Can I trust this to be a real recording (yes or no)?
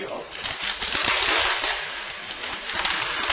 no